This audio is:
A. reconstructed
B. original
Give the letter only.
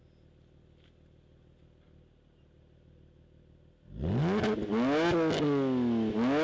B